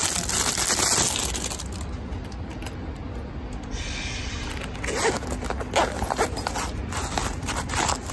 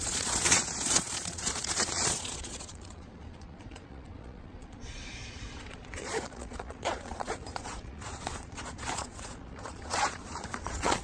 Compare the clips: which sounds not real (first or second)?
second